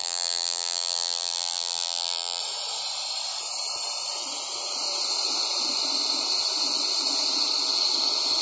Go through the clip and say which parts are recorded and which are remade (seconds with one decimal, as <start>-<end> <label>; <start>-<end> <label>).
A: 0.0-2.4 remade; 2.4-8.4 recorded